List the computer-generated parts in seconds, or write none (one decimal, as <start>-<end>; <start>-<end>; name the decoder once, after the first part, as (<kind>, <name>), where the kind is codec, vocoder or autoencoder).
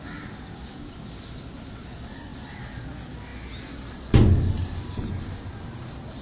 none